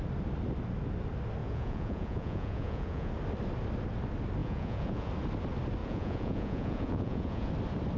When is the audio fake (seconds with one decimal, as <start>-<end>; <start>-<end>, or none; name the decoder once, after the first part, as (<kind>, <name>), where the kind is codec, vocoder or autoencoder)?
1.4-3.1 (vocoder, Vocos); 4.4-5.1; 5.8-7.5